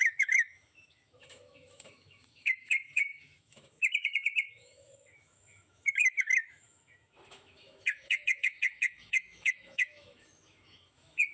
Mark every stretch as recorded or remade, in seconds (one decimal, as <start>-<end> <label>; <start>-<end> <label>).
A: 0.0-11.3 remade